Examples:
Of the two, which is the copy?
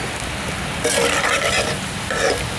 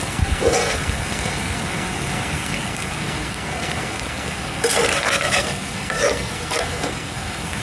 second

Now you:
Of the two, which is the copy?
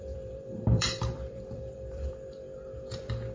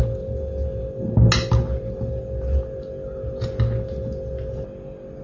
first